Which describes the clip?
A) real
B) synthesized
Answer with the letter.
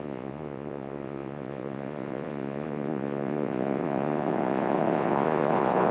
B